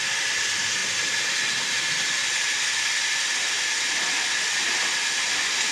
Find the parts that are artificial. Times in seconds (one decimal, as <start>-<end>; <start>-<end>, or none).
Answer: none